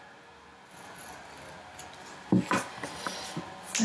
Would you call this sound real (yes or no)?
yes